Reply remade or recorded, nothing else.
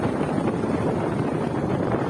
recorded